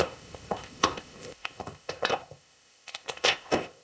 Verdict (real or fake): fake